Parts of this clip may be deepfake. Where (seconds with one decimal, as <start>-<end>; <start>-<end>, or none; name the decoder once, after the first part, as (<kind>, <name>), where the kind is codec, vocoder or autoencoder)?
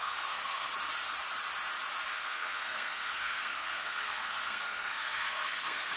0.0-0.7 (codec, SNAC); 2.1-6.0